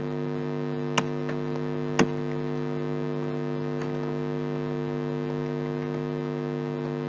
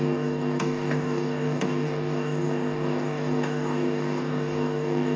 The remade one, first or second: second